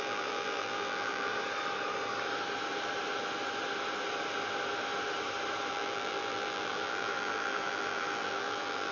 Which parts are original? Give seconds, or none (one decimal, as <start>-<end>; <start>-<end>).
1.3-5.7